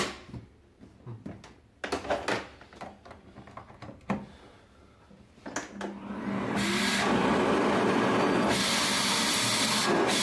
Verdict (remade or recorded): recorded